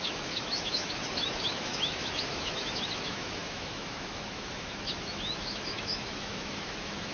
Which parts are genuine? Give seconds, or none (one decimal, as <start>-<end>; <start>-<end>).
none